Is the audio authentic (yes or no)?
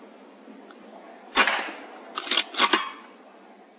yes